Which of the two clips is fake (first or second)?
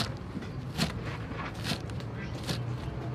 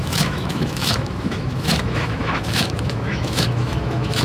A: second